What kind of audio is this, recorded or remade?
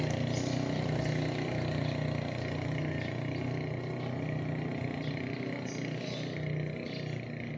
recorded